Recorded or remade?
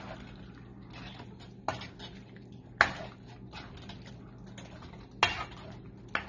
recorded